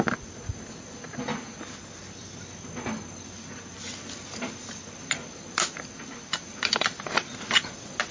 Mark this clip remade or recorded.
recorded